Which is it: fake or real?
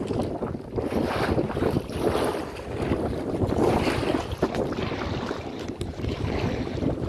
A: real